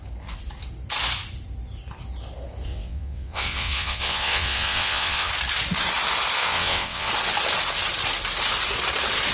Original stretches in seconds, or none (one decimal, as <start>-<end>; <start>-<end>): 0.0-2.7; 5.3-6.4; 7.1-9.3

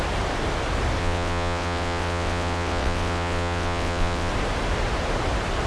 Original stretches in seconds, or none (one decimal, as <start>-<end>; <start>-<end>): 0.0-1.0; 4.3-5.7

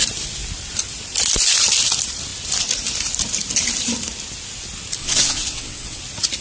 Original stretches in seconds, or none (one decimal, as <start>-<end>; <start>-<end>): 0.0-5.0; 6.0-6.4

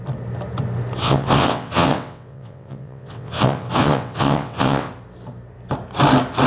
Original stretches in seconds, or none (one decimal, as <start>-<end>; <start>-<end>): 0.0-1.0; 4.9-6.5